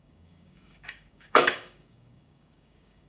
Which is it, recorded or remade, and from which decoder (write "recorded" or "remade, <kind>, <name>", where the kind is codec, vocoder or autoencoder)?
remade, codec, DAC